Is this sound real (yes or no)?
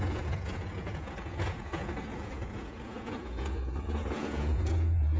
no